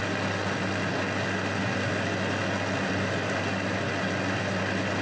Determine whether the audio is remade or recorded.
recorded